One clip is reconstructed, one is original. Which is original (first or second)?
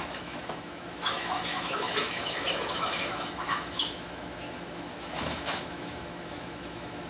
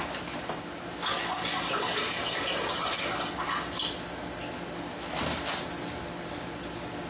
second